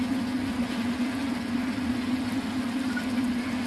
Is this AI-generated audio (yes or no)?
no